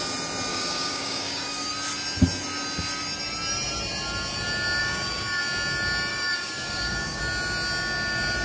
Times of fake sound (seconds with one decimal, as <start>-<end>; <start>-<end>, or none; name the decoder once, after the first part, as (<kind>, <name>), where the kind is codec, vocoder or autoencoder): 0.5-1.7 (codec, DAC); 4.8-5.4; 6.1-7.2